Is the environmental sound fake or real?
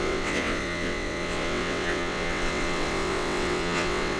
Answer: fake